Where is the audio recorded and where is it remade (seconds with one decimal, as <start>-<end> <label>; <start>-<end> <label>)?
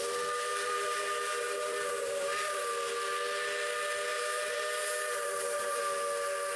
0.0-0.5 recorded; 0.5-2.7 remade; 2.7-4.1 recorded; 4.1-5.8 remade; 5.8-6.6 recorded